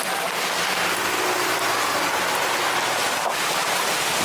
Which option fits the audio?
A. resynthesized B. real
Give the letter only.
B